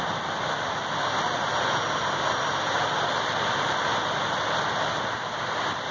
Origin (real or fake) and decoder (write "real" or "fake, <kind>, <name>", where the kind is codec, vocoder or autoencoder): real